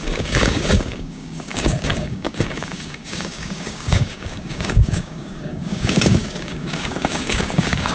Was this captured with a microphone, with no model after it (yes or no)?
no